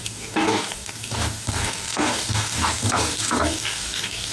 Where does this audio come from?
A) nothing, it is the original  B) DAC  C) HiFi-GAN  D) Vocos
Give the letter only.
B